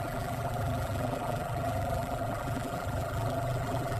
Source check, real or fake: fake